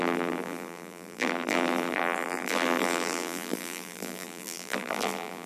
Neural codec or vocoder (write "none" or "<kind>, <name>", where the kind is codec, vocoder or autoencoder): vocoder, BigVGAN v2